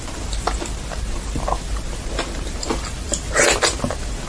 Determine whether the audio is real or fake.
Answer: real